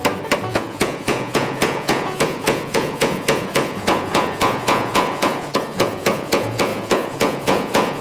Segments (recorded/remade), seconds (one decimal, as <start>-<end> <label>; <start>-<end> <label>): 0.0-0.5 recorded; 0.5-8.0 remade